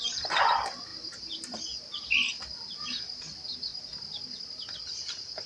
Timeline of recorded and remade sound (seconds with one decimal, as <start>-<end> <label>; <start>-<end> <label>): 0.0-3.7 recorded; 3.7-5.5 remade